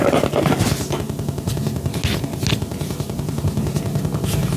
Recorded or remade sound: recorded